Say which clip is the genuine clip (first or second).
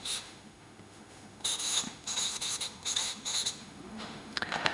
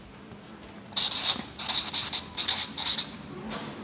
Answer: second